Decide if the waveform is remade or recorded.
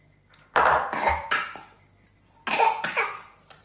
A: recorded